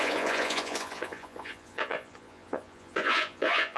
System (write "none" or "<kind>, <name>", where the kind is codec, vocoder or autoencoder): vocoder, Vocos